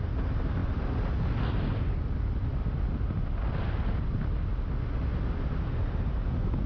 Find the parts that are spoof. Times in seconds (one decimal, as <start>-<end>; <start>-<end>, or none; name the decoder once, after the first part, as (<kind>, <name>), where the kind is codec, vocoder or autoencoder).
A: none